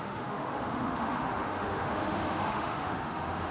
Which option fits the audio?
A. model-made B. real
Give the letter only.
A